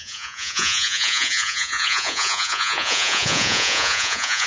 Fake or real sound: fake